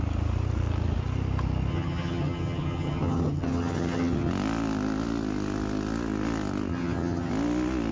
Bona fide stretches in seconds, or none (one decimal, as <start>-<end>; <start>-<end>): 0.0-1.7; 4.3-6.7; 7.3-7.9